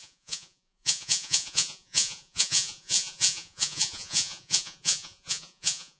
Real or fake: fake